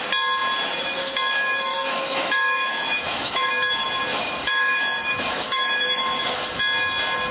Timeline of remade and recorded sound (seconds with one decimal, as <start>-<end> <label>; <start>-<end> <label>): 0.0-1.7 recorded; 1.7-3.5 remade; 3.5-4.1 recorded; 4.1-6.6 remade; 6.6-7.3 recorded